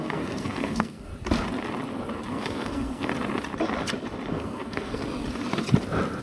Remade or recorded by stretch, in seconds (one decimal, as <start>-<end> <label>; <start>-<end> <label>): 0.0-1.1 remade; 1.1-2.3 recorded; 2.3-3.1 remade; 3.1-4.3 recorded; 4.3-5.0 remade; 5.0-6.2 recorded